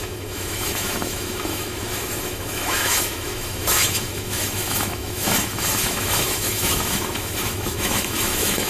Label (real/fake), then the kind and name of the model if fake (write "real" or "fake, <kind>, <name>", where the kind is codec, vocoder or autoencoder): fake, autoencoder, DAC-VAE